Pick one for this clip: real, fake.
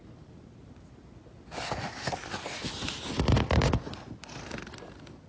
real